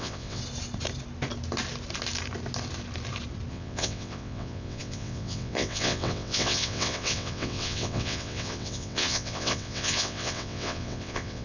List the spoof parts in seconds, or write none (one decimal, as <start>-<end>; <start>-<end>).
0.0-0.4; 3.5-11.4